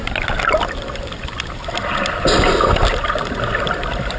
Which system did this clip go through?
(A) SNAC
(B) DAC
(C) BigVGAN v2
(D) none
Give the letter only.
D